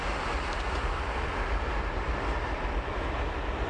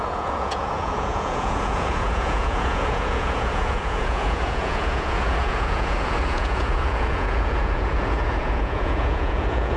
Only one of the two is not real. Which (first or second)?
second